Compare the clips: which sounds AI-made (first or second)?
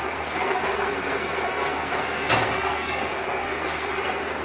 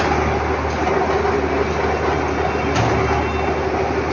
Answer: first